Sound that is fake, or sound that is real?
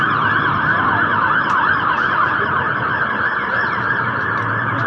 fake